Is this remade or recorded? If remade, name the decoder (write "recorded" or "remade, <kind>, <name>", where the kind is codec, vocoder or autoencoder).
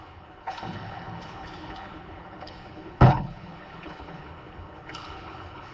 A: remade, codec, HILCodec